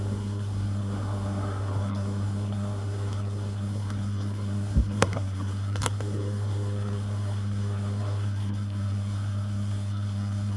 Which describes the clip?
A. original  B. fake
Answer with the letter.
B